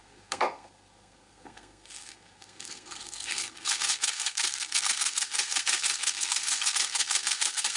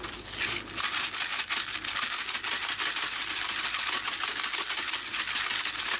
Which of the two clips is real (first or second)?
second